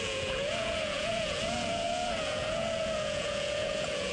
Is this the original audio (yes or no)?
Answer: no